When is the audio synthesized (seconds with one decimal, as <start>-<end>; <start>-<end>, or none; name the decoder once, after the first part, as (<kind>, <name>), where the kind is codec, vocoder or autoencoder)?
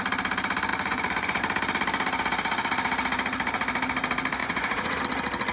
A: 0.7-1.4 (vocoder, Vocos); 4.4-5.0